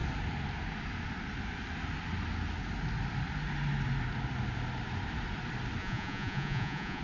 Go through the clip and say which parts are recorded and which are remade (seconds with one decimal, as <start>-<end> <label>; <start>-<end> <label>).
0.0-5.8 recorded; 5.8-7.0 remade